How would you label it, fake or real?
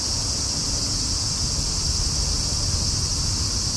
real